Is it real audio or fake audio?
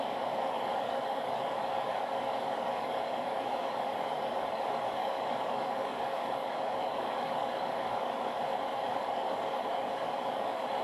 fake